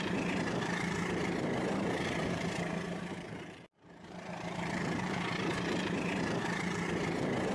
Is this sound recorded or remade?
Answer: remade